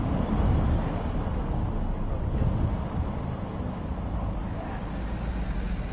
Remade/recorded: recorded